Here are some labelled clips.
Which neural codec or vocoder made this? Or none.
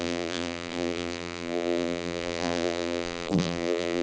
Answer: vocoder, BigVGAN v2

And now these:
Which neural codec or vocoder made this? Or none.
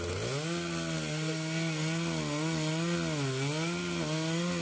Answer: none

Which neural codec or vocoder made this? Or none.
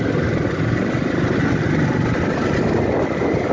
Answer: none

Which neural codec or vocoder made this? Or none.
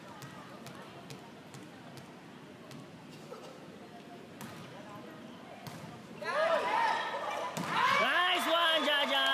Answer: none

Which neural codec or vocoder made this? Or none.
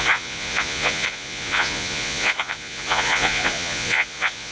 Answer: vocoder, Vocos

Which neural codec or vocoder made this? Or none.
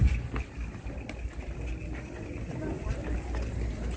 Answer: none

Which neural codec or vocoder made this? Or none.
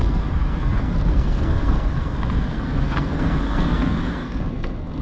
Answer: codec, SNAC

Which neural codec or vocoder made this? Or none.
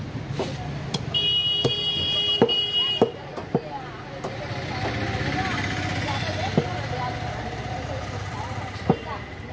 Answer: none